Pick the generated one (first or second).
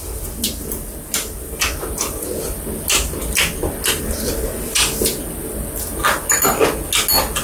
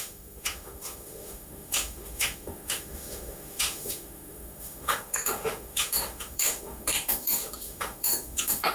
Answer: second